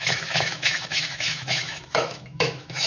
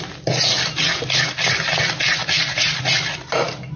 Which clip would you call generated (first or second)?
first